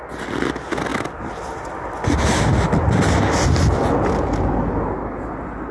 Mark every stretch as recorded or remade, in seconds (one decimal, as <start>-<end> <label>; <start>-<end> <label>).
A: 0.0-5.7 recorded